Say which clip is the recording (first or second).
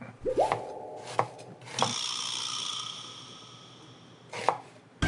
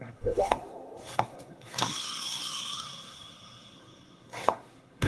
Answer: first